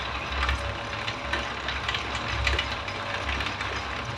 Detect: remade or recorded recorded